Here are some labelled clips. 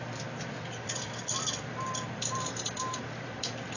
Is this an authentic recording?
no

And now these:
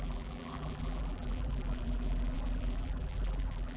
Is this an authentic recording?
no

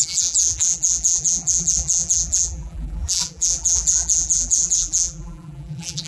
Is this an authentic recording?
no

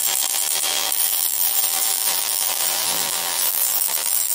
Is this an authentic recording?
no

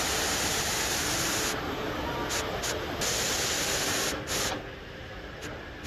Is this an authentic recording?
yes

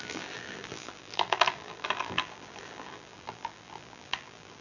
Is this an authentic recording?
no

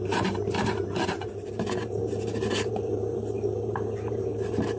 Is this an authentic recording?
no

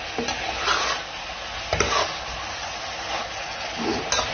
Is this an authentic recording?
yes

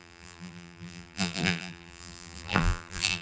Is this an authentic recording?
no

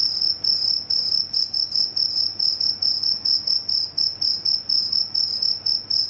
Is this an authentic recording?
yes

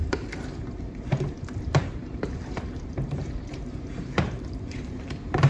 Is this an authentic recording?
no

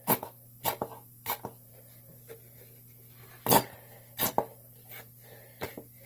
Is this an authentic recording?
yes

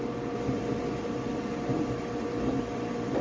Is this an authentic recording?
yes